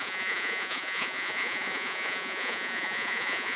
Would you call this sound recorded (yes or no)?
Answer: no